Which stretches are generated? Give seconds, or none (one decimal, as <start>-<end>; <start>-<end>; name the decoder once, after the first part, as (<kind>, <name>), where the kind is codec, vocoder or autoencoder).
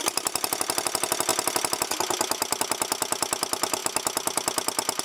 none